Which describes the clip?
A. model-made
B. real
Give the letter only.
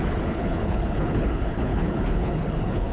A